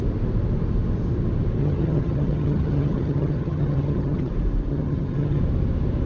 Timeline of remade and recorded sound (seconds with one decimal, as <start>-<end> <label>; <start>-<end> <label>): 0.0-1.6 recorded; 1.6-4.3 remade; 4.3-4.7 recorded; 4.7-5.4 remade; 5.4-6.1 recorded